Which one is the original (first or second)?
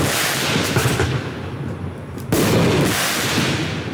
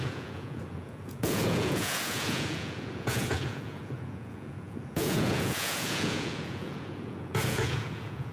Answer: first